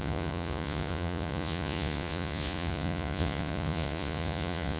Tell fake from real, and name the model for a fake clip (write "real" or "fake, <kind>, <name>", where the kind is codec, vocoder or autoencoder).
fake, vocoder, Vocos